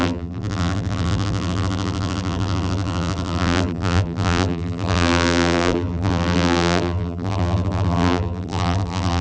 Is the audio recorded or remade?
remade